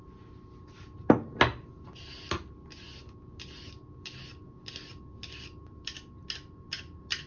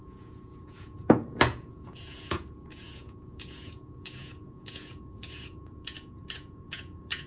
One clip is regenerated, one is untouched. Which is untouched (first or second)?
first